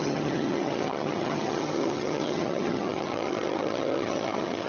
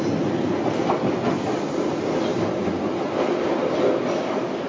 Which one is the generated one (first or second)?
first